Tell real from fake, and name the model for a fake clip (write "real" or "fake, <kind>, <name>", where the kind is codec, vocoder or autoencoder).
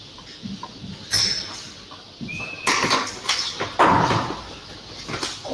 real